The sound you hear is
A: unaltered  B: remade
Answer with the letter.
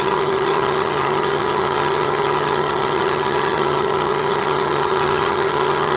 B